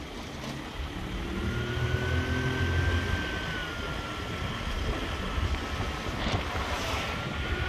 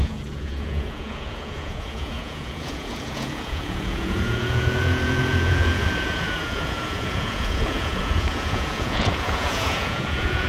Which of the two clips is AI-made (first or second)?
second